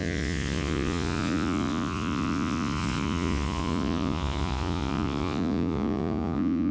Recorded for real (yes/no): no